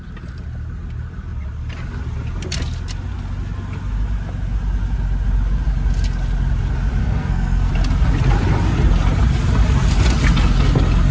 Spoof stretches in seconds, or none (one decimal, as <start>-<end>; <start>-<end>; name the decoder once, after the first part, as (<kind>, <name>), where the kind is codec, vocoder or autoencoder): 7.0-7.7 (codec, SNAC)